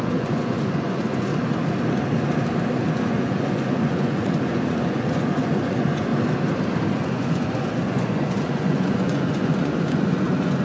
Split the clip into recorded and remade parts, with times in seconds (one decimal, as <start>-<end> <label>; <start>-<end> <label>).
0.0-1.3 remade; 1.3-2.9 recorded; 2.9-6.1 remade; 6.1-6.9 recorded; 6.9-10.6 remade